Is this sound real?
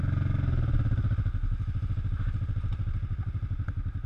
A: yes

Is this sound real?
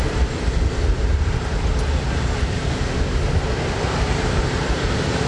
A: yes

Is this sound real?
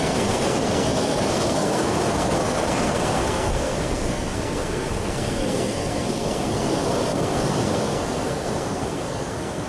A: no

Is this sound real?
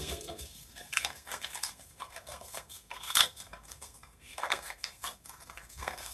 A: no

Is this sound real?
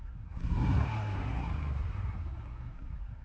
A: no